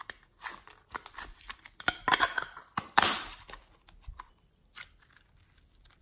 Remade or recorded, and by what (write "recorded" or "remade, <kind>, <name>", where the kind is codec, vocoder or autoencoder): remade, vocoder, BigVGAN v2